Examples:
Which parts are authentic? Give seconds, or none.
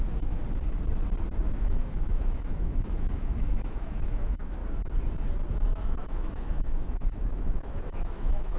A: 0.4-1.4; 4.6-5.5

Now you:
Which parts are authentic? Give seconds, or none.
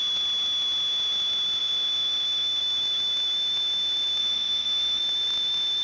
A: 0.0-1.6; 2.6-4.2; 5.0-5.8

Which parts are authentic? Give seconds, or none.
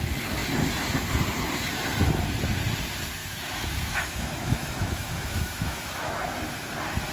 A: 0.0-3.2; 6.1-7.1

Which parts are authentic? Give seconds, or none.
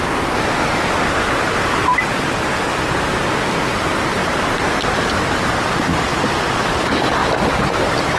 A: 0.0-8.2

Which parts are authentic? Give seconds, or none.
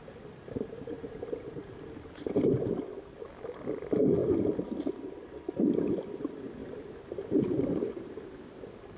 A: 0.0-9.0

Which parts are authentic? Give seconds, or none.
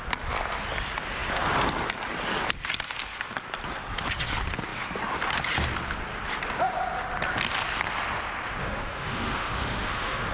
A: 0.0-8.6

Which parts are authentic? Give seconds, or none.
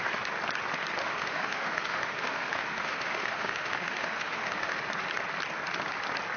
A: 0.0-1.0; 4.8-6.4